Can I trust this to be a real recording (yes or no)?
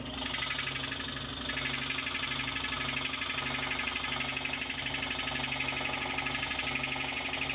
yes